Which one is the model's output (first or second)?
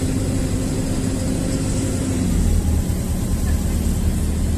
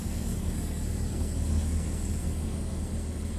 second